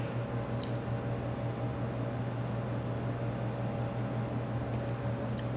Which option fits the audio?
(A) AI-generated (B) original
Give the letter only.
B